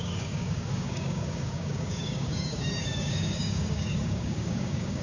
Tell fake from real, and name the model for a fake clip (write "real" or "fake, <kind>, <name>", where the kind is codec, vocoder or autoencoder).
fake, codec, DAC